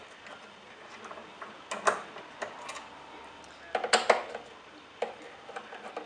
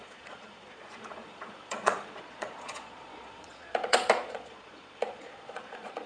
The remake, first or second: second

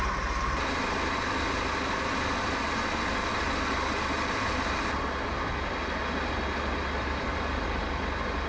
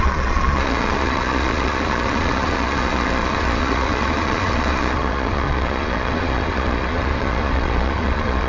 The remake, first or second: second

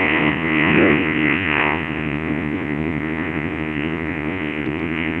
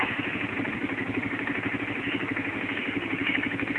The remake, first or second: first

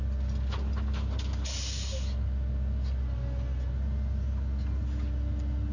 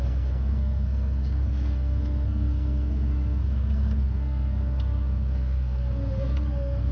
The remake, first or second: second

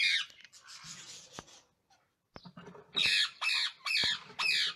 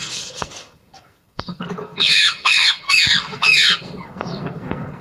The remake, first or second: second